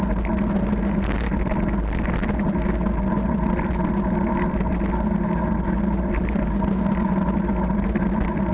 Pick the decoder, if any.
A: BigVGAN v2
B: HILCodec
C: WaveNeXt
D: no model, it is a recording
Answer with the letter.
D